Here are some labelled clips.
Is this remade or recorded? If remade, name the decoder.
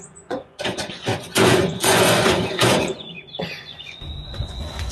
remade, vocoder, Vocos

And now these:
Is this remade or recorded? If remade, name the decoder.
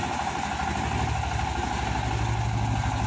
recorded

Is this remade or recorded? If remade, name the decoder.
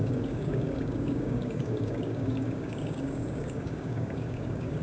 remade, codec, DAC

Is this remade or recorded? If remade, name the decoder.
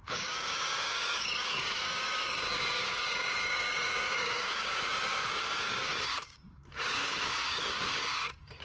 remade, codec, DAC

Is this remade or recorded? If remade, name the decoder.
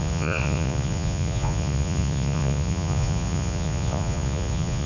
remade, vocoder, Vocos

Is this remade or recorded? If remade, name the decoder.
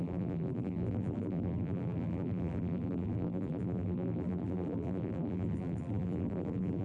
remade, vocoder, BigVGAN v2